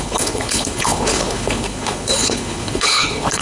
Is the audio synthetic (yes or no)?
yes